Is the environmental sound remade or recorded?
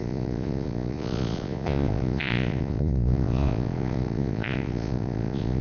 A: remade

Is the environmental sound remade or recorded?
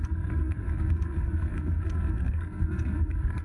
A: remade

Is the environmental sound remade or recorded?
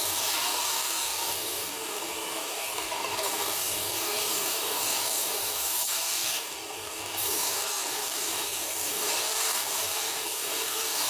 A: remade